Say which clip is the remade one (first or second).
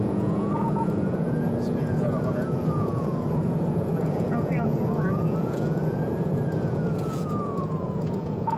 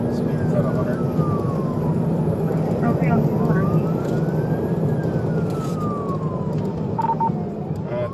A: first